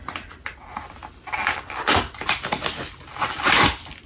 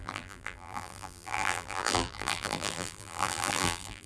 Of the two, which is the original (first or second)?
first